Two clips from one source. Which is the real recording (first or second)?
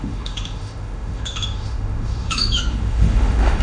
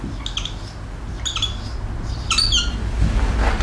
second